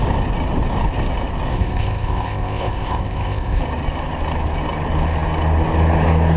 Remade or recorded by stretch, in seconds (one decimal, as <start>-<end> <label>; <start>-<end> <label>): 0.0-1.5 recorded; 1.5-3.6 remade; 3.6-6.4 recorded